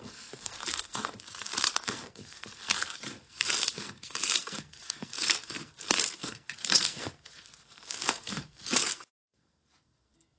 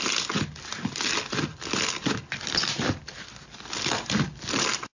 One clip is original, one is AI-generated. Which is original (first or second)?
second